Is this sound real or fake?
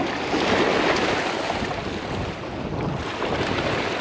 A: real